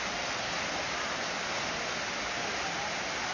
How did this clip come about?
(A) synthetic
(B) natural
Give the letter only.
B